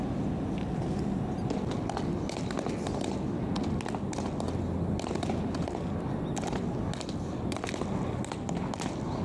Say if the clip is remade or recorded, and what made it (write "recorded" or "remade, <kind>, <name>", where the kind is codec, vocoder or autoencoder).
recorded